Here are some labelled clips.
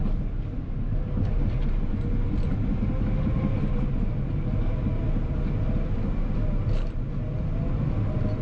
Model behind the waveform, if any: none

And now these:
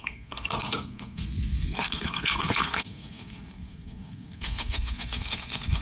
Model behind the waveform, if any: codec, SNAC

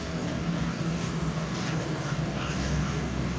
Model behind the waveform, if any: codec, DAC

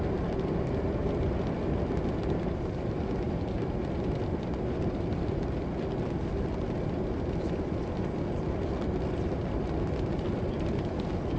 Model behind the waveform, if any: none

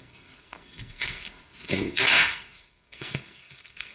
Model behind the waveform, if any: codec, SNAC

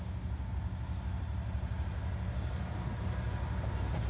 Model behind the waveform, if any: none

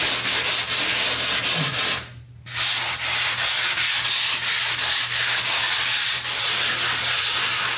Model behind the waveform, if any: none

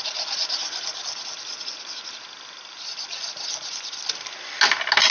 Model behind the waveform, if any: none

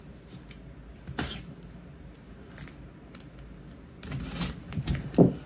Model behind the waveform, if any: none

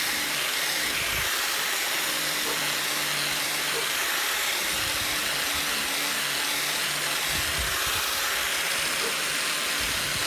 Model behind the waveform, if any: none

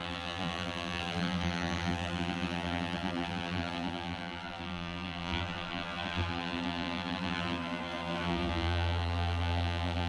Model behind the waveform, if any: vocoder, BigVGAN v2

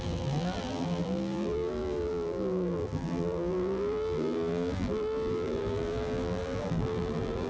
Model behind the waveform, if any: vocoder, BigVGAN v2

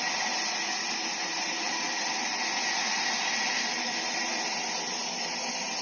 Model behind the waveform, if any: none